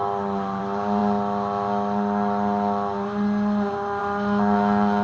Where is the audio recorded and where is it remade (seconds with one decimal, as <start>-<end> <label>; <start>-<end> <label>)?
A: 0.0-5.0 recorded